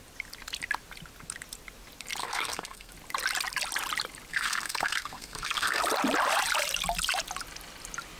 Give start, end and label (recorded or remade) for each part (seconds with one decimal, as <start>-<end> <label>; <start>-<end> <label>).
0.0-2.2 recorded; 2.2-2.9 remade; 2.9-4.3 recorded; 4.3-5.8 remade; 5.8-8.2 recorded